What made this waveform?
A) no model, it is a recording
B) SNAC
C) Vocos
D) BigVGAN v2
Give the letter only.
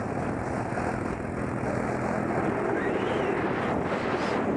A